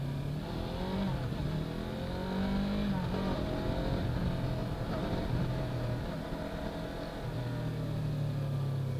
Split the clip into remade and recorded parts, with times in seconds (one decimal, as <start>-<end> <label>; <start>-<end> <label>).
0.0-4.6 recorded; 4.6-6.0 remade; 6.0-9.0 recorded